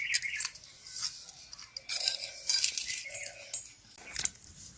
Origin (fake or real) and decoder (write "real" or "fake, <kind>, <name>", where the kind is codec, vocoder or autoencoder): real